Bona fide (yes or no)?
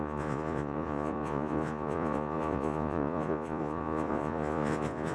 no